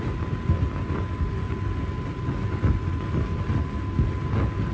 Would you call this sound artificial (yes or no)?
no